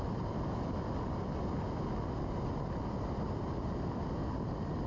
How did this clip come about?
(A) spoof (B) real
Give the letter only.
B